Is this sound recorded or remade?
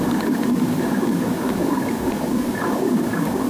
remade